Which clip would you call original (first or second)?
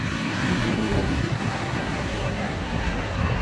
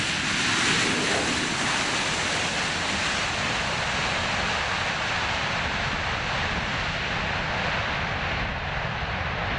second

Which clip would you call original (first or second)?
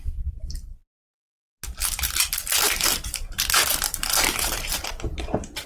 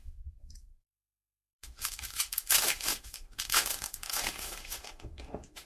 first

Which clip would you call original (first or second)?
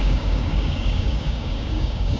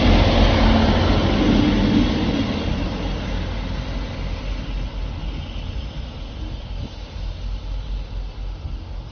second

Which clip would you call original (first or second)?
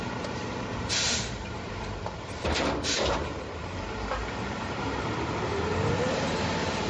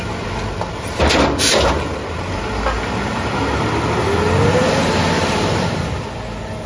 second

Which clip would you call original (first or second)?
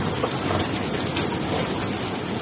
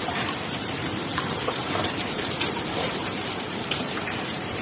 first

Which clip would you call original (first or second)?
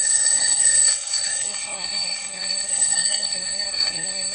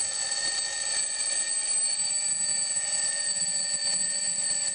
second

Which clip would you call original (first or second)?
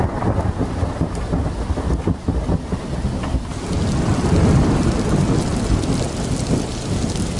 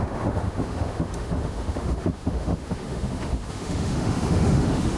first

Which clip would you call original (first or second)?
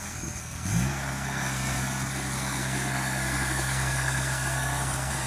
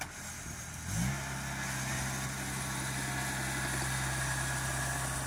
second